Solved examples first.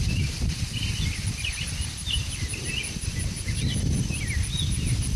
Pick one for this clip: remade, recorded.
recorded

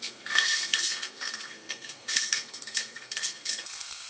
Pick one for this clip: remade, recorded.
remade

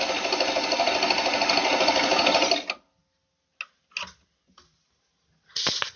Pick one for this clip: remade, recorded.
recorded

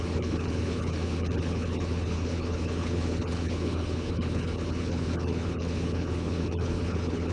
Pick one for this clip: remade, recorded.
remade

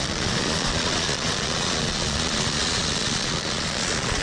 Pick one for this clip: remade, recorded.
remade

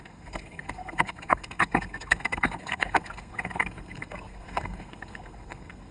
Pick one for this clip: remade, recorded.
remade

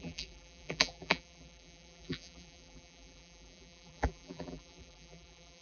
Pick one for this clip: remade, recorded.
remade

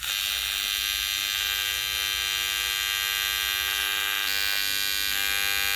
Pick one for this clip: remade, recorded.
recorded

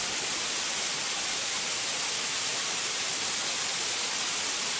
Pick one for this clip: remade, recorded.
recorded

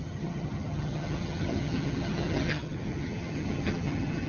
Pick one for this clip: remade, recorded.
remade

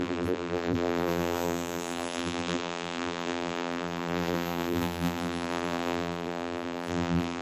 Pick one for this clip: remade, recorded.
remade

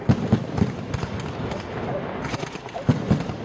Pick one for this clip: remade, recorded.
recorded